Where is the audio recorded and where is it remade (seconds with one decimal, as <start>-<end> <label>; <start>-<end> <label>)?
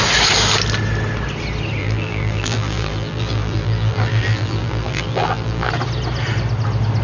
0.0-1.8 recorded; 1.8-5.7 remade; 5.7-7.0 recorded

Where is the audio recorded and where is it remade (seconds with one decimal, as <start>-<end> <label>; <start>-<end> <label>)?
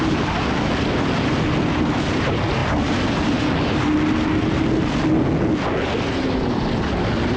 0.0-7.4 recorded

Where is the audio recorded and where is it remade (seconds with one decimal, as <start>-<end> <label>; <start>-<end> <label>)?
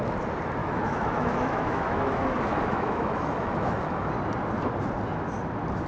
0.0-0.6 recorded; 0.6-4.1 remade; 4.1-5.9 recorded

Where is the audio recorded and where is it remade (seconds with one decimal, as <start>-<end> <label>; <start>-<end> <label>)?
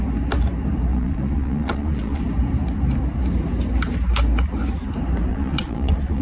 0.0-0.9 recorded; 0.9-2.2 remade; 2.2-5.3 recorded; 5.3-6.2 remade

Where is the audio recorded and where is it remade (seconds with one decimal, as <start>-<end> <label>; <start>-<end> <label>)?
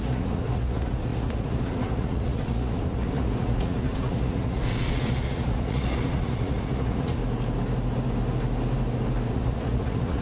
0.0-7.2 remade; 7.2-9.3 recorded; 9.3-10.2 remade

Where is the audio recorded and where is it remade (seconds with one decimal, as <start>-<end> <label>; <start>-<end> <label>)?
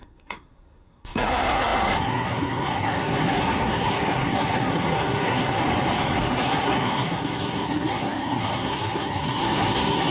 0.0-5.6 remade; 5.6-6.2 recorded; 6.2-10.1 remade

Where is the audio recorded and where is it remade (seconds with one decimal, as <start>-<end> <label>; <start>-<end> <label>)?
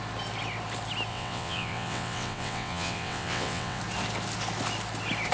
0.0-1.1 recorded; 1.1-3.8 remade; 3.8-5.3 recorded